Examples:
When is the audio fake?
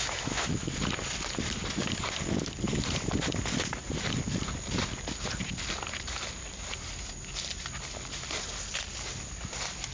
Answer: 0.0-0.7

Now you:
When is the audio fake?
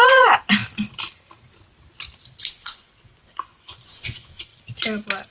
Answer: 0.0-0.6; 2.4-4.5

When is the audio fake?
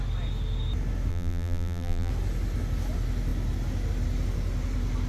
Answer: 1.1-2.1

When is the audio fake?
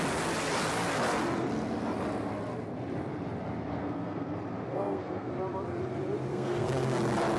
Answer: 3.7-4.3; 4.7-5.3; 6.3-7.0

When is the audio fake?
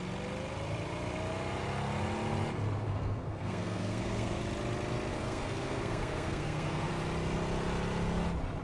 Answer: 2.9-4.4; 5.1-6.9